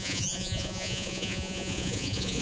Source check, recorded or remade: remade